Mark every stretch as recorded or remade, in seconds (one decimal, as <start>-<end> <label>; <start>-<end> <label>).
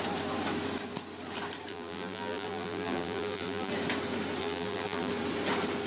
0.0-1.7 recorded; 1.7-3.7 remade; 3.7-4.4 recorded; 4.4-5.1 remade; 5.1-5.9 recorded